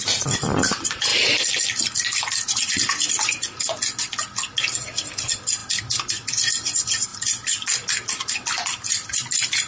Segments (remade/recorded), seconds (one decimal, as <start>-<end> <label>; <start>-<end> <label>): 0.0-9.7 recorded

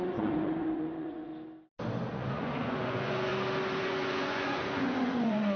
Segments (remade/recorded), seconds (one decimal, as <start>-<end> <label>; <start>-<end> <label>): 0.0-1.3 remade; 1.3-2.1 recorded; 2.1-3.3 remade; 3.3-3.8 recorded; 3.8-5.6 remade

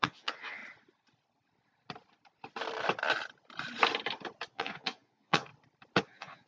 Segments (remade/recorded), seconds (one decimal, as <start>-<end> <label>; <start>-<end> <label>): 0.0-0.6 remade; 0.6-4.5 recorded; 4.5-5.5 remade; 5.5-6.0 recorded; 6.0-6.5 remade

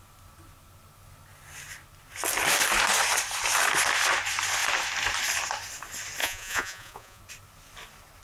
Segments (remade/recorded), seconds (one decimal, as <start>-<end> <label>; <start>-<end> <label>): 0.0-6.2 recorded; 6.2-7.2 remade; 7.2-8.2 recorded